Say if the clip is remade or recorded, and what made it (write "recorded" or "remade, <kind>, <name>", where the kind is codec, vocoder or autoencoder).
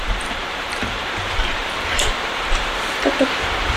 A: remade, vocoder, BigVGAN v2